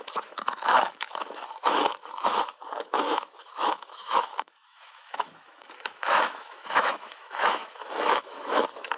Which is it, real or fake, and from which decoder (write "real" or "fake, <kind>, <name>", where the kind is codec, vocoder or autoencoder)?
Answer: fake, autoencoder, DAC-VAE